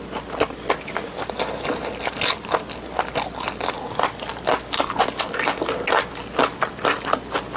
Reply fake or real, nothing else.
real